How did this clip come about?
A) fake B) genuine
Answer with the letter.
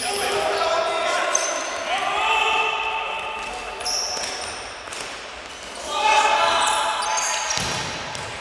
B